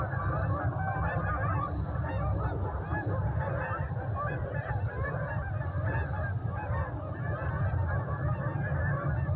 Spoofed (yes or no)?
no